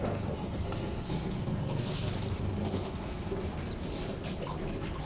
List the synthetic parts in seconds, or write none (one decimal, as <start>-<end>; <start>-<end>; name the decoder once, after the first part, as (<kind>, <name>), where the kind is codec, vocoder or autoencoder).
0.0-2.1 (codec, SNAC); 2.6-3.3